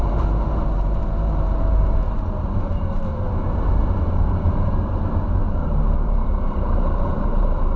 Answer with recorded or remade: remade